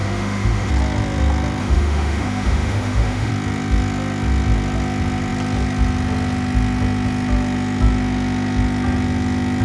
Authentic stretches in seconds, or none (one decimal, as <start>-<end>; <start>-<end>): 0.7-1.6; 3.3-9.6